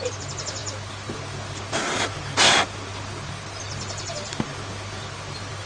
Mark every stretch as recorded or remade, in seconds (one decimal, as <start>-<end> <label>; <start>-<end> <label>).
0.0-5.7 recorded